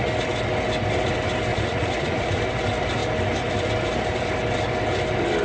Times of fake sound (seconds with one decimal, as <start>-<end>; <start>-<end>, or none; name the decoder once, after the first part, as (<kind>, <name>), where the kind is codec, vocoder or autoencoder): 1.5-2.4 (vocoder, Vocos)

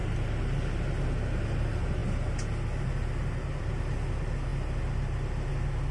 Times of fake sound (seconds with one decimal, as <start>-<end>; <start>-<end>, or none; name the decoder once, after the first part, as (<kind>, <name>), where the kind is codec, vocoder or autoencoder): none